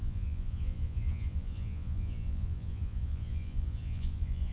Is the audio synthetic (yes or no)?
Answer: yes